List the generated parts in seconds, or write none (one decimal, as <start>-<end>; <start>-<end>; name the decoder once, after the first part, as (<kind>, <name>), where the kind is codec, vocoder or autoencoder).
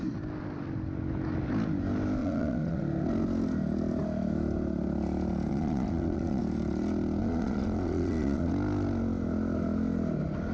2.2-2.8 (vocoder, Vocos); 5.5-6.4; 7.2-8.5